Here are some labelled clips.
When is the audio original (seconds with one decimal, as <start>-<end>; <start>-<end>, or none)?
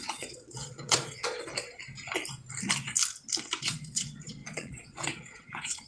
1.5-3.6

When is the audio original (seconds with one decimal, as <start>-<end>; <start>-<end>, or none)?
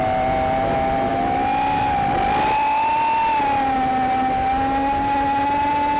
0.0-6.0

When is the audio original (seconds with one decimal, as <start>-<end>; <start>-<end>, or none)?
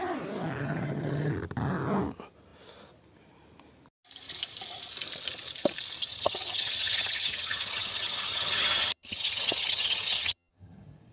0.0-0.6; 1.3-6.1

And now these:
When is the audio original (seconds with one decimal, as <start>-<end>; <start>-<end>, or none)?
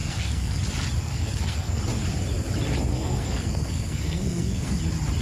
0.6-1.0; 1.8-2.9; 4.8-5.2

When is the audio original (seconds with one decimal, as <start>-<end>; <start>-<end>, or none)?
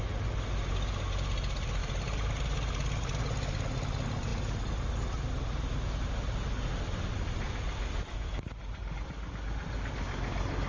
0.0-10.7